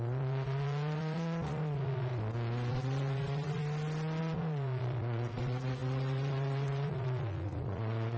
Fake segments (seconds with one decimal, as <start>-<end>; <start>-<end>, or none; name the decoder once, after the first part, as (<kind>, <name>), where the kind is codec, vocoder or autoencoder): 0.0-2.1 (vocoder, Vocos); 2.7-3.6; 4.2-8.2